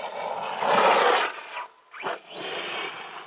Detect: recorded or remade recorded